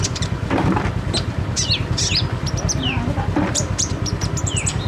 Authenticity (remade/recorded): remade